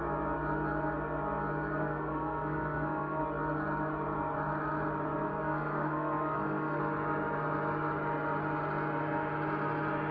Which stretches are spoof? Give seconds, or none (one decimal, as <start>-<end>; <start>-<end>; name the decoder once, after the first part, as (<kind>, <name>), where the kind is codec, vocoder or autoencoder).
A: 1.8-3.2 (codec, SNAC); 5.3-6.8